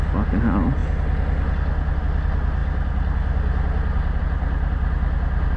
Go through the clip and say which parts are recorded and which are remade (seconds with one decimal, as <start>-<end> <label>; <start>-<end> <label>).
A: 0.0-5.6 recorded